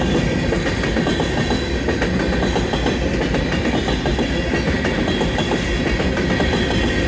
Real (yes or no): yes